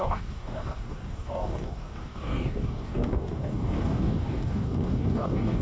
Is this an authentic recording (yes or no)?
no